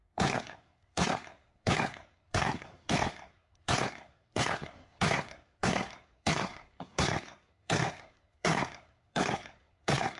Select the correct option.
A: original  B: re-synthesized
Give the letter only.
B